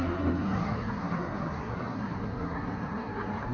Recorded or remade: remade